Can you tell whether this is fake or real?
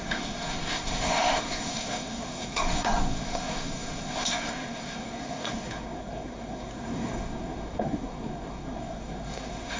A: fake